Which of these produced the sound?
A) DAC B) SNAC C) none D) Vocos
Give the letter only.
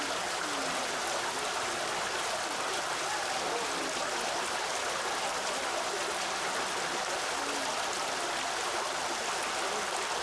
C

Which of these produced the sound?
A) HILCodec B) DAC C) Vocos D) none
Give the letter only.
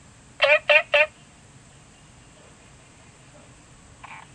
D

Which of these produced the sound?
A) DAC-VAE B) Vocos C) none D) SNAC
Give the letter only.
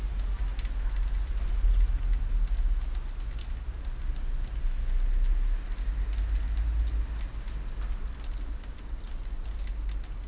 C